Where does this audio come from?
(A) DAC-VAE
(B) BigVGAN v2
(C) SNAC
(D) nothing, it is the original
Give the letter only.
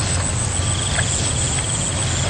D